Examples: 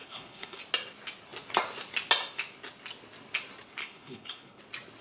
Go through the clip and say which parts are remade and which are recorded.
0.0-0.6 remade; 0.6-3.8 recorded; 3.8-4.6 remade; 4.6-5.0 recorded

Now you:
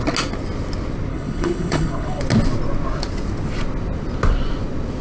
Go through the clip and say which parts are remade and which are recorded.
0.0-1.1 recorded; 1.1-2.2 remade; 2.2-5.0 recorded